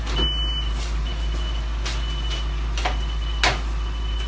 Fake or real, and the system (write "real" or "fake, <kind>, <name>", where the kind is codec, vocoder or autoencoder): real